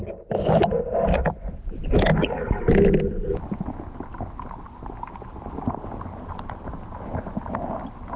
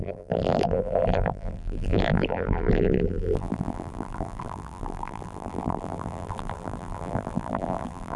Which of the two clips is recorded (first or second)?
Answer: first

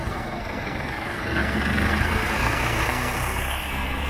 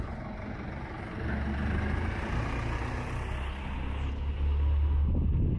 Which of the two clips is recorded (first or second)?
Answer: second